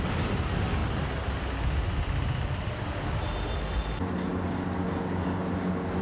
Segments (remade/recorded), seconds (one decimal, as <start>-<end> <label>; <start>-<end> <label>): 0.0-6.0 recorded